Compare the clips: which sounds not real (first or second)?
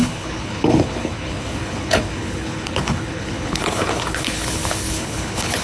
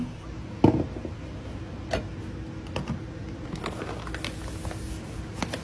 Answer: first